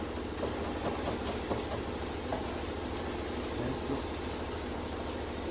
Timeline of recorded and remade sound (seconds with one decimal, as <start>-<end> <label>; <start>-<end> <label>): 0.0-5.5 recorded